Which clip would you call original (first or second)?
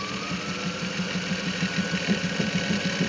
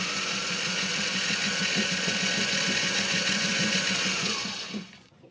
first